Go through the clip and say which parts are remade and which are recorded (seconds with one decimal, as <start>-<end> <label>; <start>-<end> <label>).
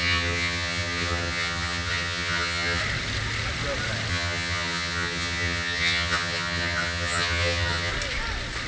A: 0.0-2.8 remade; 2.8-4.1 recorded; 4.1-7.9 remade; 7.9-8.7 recorded